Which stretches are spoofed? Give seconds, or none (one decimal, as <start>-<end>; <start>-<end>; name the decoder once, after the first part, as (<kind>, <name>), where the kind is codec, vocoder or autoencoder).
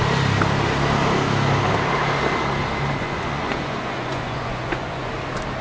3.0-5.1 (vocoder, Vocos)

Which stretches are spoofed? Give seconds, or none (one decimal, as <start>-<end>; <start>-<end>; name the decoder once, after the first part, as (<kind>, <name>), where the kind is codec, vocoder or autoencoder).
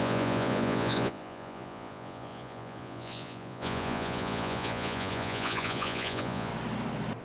0.0-6.5 (vocoder, Vocos)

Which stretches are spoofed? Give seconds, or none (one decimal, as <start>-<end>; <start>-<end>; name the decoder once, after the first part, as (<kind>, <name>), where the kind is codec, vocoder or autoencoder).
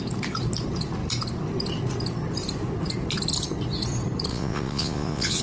4.3-5.4 (vocoder, Vocos)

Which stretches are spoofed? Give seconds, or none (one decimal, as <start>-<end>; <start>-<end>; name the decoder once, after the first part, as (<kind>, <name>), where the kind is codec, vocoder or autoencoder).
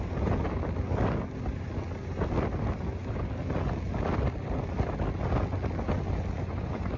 none